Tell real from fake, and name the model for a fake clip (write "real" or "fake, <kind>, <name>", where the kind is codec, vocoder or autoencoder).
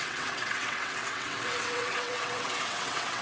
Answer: fake, vocoder, WaveNeXt